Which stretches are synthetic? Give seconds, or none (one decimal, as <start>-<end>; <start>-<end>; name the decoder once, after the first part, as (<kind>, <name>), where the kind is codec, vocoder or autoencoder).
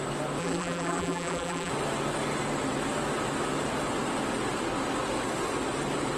0.4-1.7 (vocoder, BigVGAN v2)